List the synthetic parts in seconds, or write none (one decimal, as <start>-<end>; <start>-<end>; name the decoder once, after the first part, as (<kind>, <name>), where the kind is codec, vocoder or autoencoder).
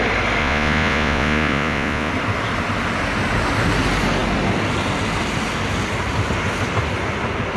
0.4-2.1 (vocoder, Vocos)